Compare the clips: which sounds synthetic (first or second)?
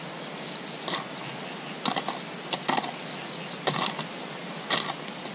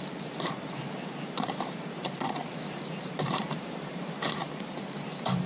second